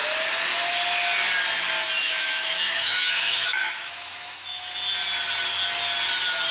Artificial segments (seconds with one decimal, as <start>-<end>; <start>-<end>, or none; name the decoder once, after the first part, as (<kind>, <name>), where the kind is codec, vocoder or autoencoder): 2.0-4.7 (autoencoder, DAC-VAE)